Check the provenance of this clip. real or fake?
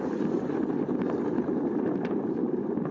real